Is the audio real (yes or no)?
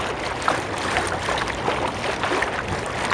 yes